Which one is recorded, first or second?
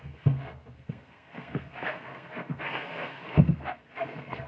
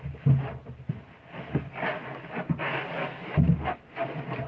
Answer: second